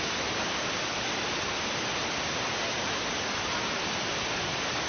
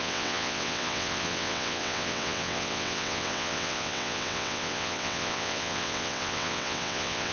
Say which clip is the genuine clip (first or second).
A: first